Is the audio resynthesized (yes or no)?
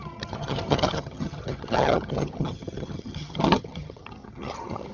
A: yes